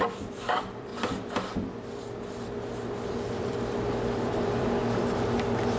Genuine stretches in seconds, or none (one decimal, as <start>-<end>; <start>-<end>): 0.9-3.4; 4.8-5.8